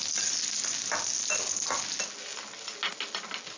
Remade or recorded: recorded